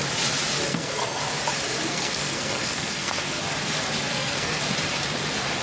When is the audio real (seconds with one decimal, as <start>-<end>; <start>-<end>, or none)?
0.0-0.7; 1.2-1.9; 3.4-4.1; 4.6-5.6